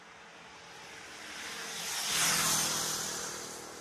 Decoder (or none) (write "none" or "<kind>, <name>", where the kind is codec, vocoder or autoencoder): none